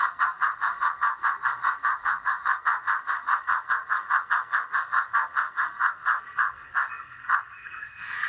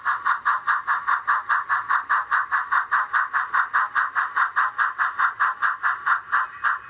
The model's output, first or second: first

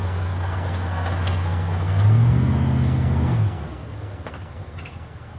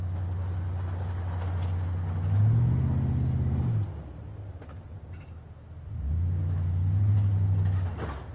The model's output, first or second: first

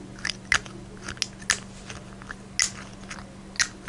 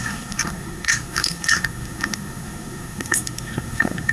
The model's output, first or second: second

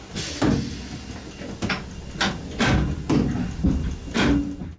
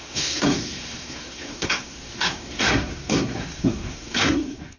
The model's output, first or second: second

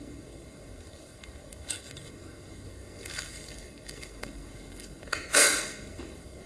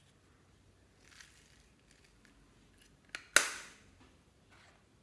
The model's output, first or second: first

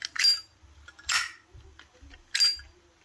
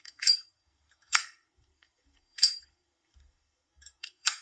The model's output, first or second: second